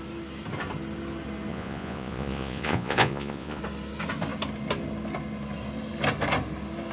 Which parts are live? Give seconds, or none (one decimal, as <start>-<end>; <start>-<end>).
0.0-1.5; 3.6-6.9